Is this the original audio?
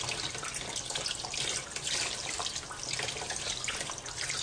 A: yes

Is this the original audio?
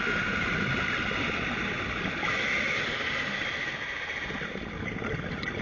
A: yes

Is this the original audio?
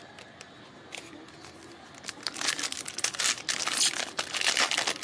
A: yes